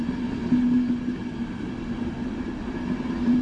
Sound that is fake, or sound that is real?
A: real